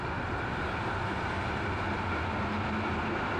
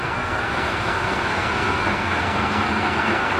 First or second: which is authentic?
first